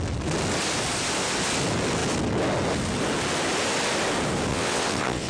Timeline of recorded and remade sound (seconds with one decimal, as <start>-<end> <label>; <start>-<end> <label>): 0.0-4.5 recorded; 4.5-5.3 remade